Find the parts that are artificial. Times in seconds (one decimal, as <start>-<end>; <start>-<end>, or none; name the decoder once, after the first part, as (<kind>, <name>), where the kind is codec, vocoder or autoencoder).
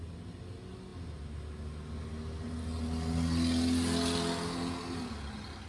none